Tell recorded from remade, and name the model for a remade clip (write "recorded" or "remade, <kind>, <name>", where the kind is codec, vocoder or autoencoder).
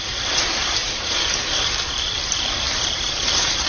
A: remade, vocoder, BigVGAN v2